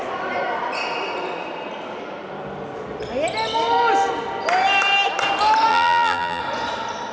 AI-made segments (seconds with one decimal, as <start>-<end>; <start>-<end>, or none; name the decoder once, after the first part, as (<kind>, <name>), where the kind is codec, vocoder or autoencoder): 5.7-6.4 (vocoder, BigVGAN v2)